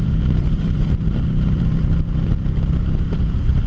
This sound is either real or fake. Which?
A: fake